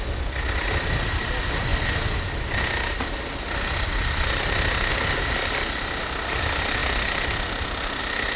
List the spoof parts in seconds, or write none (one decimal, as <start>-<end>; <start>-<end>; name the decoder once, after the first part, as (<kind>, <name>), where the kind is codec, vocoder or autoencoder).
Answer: none